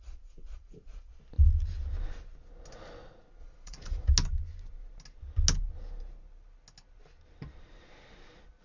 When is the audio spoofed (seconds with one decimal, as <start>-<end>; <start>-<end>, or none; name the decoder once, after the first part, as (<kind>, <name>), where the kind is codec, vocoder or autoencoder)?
0.0-1.1 (vocoder, Vocos); 3.4-4.1